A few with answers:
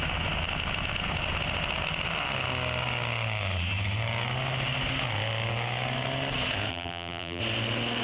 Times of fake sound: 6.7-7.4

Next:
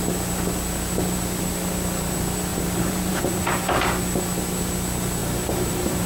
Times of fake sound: 2.5-3.2; 5.2-6.1

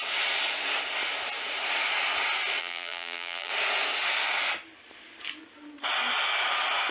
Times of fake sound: 2.6-3.5